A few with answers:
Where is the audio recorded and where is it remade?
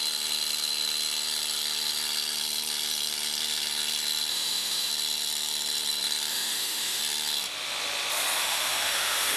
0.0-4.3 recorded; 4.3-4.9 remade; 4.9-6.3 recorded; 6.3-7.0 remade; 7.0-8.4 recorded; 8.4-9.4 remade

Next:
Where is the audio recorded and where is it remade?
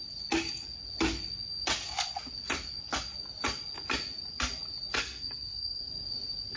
0.0-5.0 recorded; 5.0-5.9 remade; 5.9-6.6 recorded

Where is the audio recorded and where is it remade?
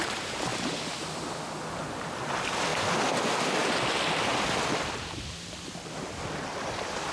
0.0-0.5 remade; 0.5-2.0 recorded; 2.0-2.7 remade; 2.7-3.7 recorded; 3.7-4.3 remade; 4.3-6.5 recorded; 6.5-7.1 remade